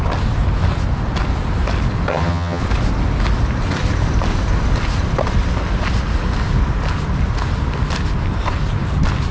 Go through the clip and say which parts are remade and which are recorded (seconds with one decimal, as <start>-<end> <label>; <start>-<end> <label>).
0.0-2.1 recorded; 2.1-2.6 remade; 2.6-9.3 recorded